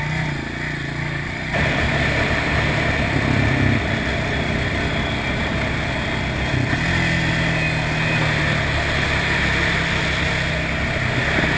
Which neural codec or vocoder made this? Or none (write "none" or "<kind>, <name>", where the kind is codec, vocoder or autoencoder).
none